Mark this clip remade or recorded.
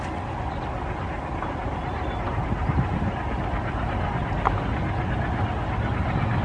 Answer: recorded